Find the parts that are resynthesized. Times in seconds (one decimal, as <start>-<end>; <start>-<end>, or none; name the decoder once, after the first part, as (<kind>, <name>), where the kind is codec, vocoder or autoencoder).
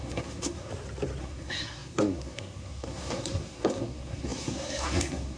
0.0-0.7 (codec, SNAC); 1.2-5.4